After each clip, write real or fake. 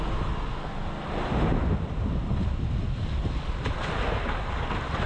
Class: real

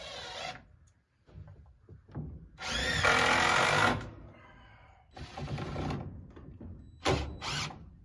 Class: real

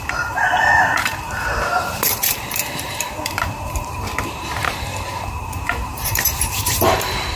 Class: fake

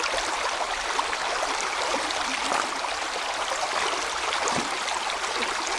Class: fake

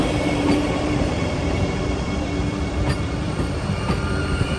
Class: fake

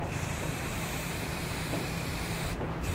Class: fake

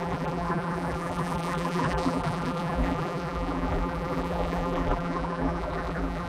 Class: fake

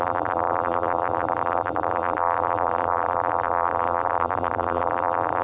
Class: fake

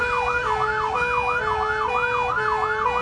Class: real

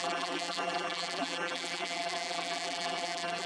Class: fake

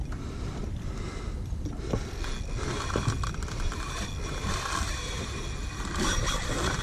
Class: real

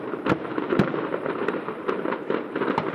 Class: fake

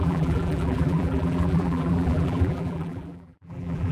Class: fake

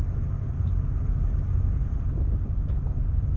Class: real